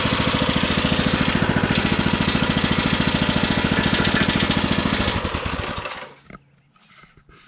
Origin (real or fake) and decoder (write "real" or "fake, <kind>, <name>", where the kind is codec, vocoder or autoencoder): real